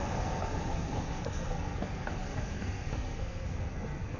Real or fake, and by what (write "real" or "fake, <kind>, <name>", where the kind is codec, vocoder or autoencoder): fake, codec, SNAC